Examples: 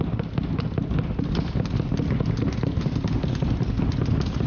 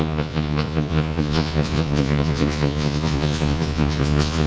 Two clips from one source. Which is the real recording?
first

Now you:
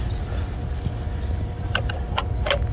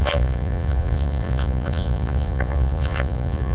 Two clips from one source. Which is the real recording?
first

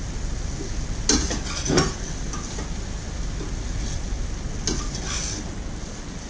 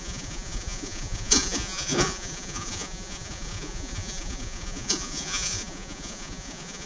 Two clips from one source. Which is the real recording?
first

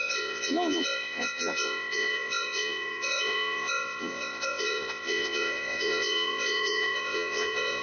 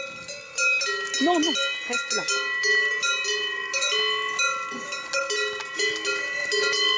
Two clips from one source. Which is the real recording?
second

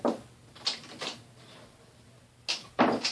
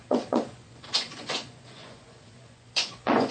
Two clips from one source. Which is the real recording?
first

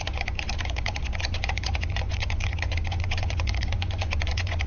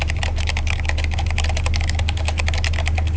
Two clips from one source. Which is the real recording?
second